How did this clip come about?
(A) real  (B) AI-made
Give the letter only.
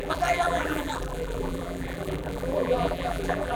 B